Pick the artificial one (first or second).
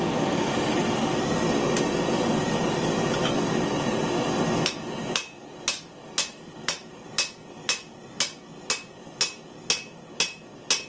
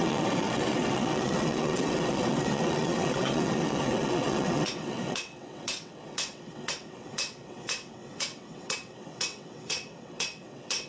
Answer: second